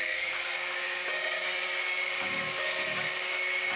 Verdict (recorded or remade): remade